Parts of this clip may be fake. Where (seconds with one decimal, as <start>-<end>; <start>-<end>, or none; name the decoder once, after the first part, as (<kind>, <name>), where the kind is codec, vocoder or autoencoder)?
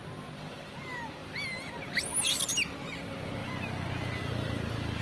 none